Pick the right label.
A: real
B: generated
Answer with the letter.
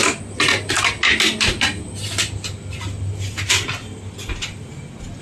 A